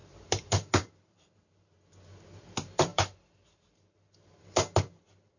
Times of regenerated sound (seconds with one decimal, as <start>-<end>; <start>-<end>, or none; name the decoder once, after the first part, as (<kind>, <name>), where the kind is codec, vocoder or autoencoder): 0.0-0.9 (vocoder, BigVGAN v2); 2.9-4.4